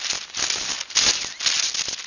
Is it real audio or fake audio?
real